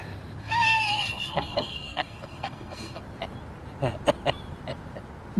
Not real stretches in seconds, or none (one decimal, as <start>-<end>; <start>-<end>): 0.4-3.0